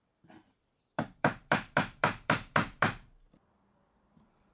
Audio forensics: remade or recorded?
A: remade